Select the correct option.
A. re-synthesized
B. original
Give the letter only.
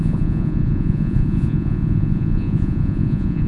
A